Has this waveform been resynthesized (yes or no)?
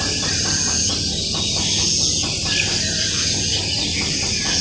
no